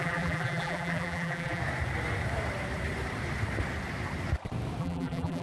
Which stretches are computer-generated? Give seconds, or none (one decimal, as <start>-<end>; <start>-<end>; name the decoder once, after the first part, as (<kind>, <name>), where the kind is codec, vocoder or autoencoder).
0.0-1.6 (vocoder, BigVGAN v2); 4.8-5.4